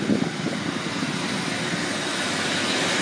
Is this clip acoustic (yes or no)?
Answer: yes